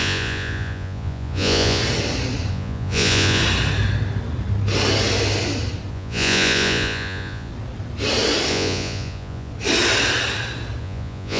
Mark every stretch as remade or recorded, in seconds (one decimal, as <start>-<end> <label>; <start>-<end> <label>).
0.0-1.8 remade; 1.8-2.5 recorded; 2.5-3.4 remade; 3.4-5.9 recorded; 5.9-7.5 remade; 7.5-8.5 recorded; 8.5-9.5 remade; 9.5-10.8 recorded; 10.8-11.4 remade